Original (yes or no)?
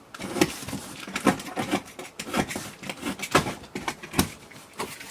yes